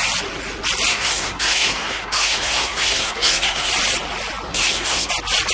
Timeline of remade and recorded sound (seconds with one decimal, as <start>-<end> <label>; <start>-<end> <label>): 0.0-0.9 recorded; 0.9-3.7 remade; 3.7-4.5 recorded; 4.5-5.1 remade; 5.1-5.5 recorded